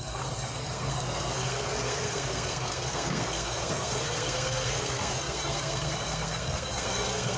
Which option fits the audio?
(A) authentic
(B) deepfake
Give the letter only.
B